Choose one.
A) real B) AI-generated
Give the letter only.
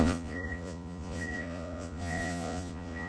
B